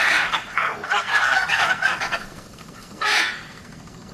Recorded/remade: remade